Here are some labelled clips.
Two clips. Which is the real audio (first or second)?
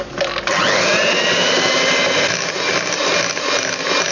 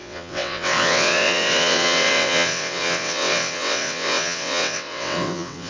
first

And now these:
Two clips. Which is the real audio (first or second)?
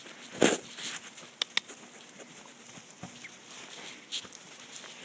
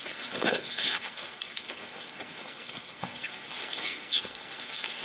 first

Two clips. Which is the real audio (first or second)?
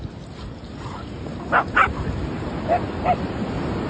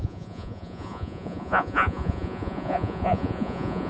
first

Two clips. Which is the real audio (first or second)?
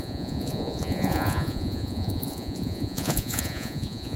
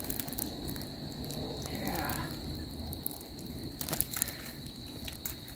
second